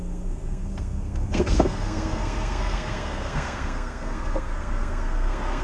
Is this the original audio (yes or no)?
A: no